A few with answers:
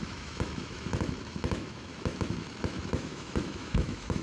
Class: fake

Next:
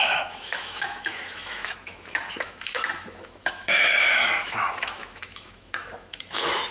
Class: fake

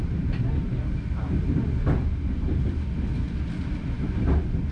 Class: real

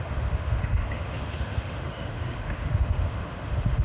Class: fake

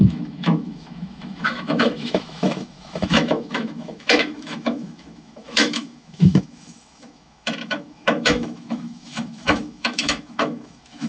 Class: fake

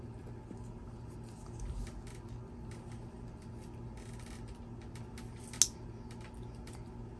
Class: real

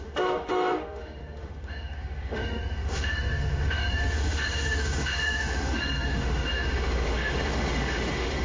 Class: fake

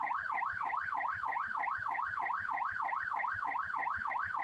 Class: fake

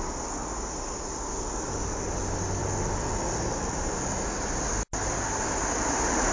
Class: real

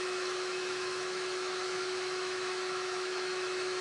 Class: fake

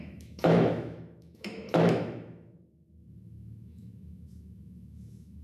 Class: fake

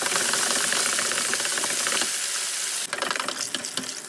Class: real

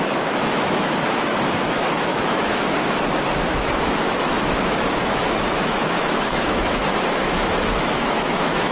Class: fake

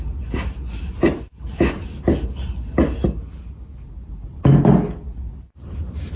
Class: real